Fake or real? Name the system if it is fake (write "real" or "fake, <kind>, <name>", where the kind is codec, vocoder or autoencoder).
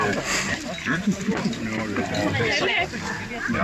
real